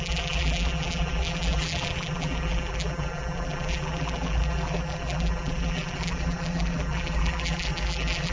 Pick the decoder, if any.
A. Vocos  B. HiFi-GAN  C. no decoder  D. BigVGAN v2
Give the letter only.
D